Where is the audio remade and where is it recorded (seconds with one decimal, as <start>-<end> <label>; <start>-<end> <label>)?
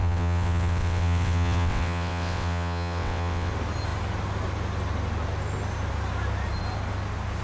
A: 0.0-3.5 remade; 3.5-7.4 recorded